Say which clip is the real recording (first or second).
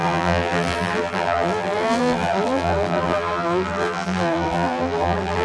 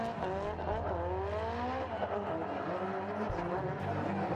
second